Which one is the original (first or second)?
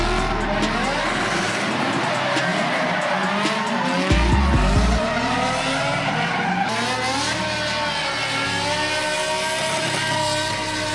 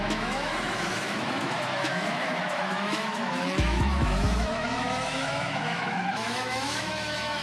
first